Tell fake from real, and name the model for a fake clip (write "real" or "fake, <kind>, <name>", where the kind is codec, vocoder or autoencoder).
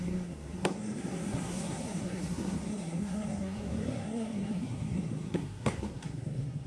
fake, codec, SNAC